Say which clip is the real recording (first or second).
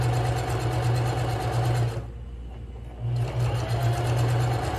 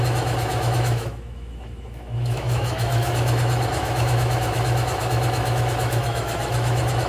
first